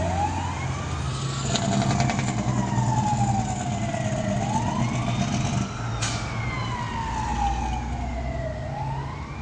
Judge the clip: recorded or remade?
recorded